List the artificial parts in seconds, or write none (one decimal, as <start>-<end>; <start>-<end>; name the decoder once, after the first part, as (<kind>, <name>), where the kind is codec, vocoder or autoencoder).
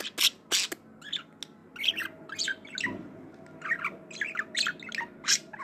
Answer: none